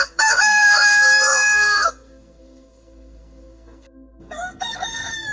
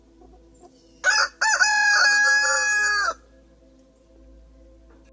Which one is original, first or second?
second